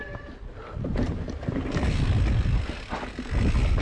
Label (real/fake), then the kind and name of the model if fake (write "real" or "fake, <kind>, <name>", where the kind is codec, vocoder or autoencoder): real